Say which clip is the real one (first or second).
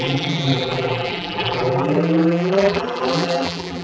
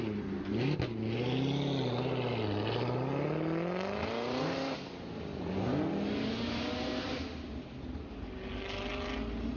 second